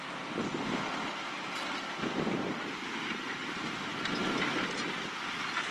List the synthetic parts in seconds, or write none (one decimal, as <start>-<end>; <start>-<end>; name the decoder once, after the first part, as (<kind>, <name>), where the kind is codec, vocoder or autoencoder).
none